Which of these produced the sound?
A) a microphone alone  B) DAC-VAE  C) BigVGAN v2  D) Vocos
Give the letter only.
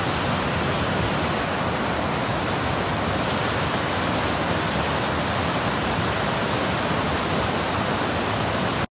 A